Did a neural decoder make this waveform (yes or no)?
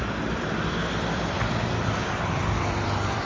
yes